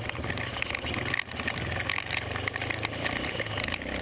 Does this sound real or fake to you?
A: real